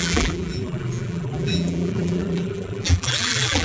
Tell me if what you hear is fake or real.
fake